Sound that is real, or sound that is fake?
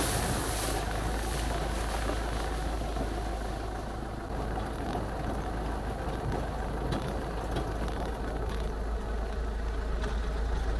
real